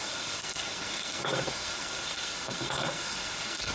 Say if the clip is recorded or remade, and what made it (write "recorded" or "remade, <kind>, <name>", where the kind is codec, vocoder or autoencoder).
remade, codec, SNAC